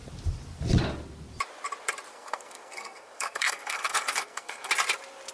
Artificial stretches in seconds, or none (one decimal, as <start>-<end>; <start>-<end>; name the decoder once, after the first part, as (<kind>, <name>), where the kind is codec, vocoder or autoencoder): 2.1-4.7 (codec, SNAC)